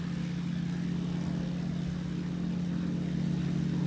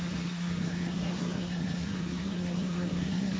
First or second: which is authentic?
first